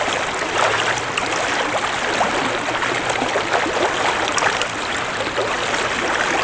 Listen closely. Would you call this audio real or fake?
real